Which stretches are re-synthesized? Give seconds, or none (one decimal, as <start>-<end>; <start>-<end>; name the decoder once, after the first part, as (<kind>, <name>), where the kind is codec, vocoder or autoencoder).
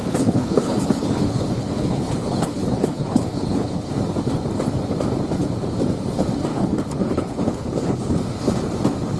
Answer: 0.0-3.9 (codec, HILCodec); 6.5-8.2